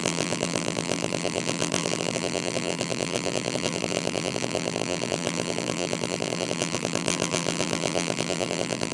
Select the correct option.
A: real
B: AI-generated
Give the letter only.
B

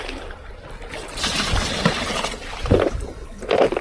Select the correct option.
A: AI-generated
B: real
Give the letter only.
A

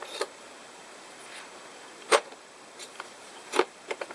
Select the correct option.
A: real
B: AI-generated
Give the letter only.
B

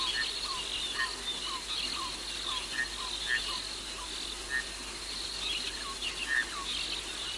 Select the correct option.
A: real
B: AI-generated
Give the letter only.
A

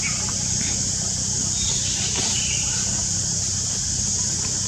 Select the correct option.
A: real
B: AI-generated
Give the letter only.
A